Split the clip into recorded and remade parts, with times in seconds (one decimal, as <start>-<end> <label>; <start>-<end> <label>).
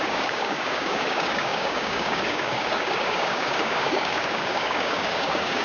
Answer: 0.0-5.6 remade